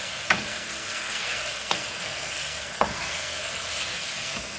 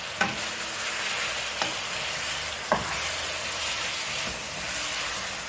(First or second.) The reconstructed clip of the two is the first